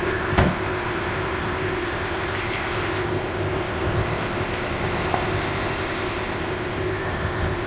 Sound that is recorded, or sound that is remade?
remade